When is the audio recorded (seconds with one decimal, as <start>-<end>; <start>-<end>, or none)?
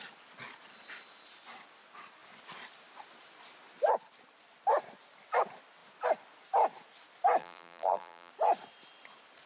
0.0-7.4; 8.3-9.5